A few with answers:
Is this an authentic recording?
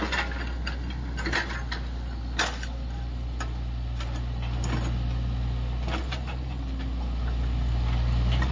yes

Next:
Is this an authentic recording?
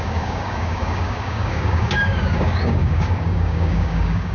no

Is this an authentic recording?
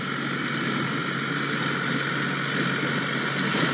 yes